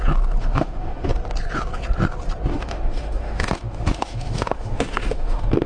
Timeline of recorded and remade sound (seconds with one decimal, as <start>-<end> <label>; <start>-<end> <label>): 0.0-0.4 recorded; 0.4-1.1 remade; 1.1-2.5 recorded; 2.5-5.7 remade